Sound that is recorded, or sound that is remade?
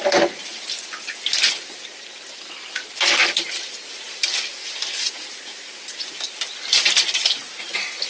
recorded